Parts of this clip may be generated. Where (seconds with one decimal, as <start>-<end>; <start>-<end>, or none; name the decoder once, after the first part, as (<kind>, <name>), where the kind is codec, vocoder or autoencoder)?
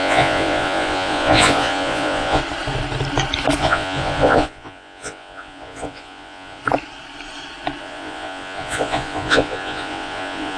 0.0-2.4 (vocoder, Vocos); 3.6-6.6; 7.8-10.6